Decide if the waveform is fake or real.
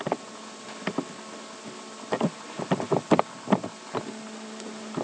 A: real